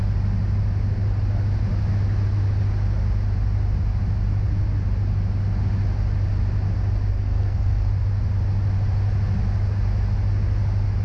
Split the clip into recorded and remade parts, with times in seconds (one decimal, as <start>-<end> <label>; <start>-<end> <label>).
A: 0.0-7.1 recorded; 7.1-7.9 remade; 7.9-11.0 recorded